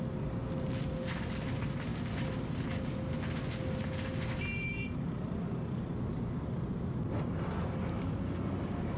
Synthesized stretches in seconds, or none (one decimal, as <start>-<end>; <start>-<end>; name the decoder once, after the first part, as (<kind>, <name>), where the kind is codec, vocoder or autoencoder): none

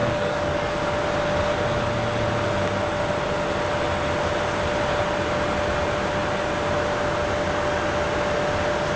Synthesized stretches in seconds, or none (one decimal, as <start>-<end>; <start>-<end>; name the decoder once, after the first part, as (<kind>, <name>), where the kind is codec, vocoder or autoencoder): 0.0-0.8 (codec, DAC)

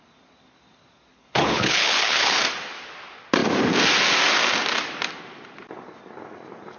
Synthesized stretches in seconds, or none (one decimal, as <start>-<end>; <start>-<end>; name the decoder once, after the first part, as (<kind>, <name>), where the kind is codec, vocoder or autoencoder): 1.1-2.4 (codec, HILCodec)

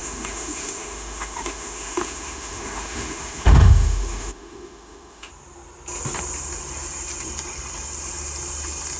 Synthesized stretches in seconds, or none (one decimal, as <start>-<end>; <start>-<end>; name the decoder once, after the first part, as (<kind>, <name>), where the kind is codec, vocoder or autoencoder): 0.0-5.3 (autoencoder, DAC-VAE)

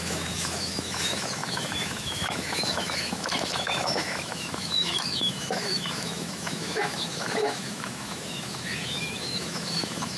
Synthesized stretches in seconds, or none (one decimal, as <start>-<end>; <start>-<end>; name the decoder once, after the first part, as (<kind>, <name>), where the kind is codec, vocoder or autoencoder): 0.0-10.2 (autoencoder, DAC-VAE)